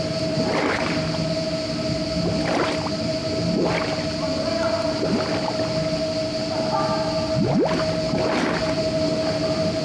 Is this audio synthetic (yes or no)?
no